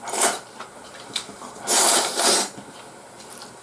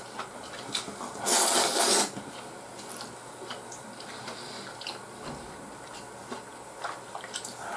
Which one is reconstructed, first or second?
first